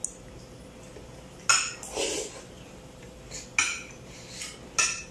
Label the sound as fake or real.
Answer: real